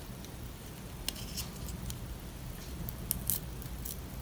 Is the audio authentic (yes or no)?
yes